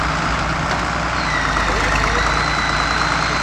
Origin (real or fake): real